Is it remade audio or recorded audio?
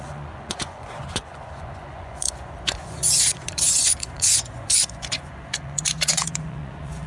remade